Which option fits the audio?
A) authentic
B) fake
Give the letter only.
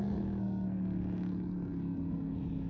B